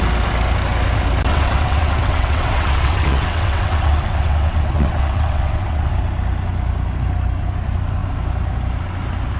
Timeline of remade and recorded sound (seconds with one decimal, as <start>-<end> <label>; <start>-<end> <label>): 0.0-1.3 recorded; 1.3-5.9 remade; 5.9-9.4 recorded